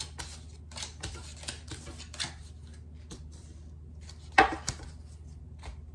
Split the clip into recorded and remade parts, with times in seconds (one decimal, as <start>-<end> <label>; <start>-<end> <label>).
0.0-5.9 recorded

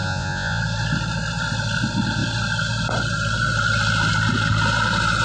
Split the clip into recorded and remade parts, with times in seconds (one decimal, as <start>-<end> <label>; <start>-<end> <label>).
0.0-0.6 remade; 0.6-5.2 recorded